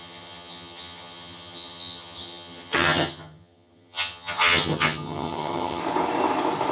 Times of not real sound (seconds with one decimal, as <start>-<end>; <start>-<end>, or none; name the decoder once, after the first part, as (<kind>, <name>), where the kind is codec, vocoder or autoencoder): 0.0-5.8 (vocoder, HiFi-GAN)